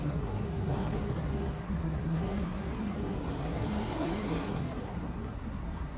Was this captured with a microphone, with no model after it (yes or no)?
no